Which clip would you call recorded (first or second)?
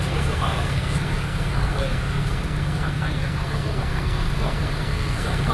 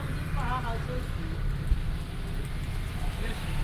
second